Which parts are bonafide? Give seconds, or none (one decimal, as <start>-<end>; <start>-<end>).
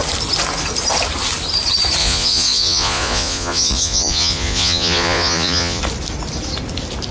0.0-2.0; 5.8-7.1